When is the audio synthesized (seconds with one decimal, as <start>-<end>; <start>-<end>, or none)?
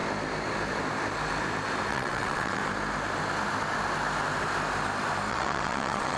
1.9-2.6; 5.3-6.2